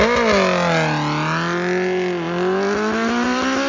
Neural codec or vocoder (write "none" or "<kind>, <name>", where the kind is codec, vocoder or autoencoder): none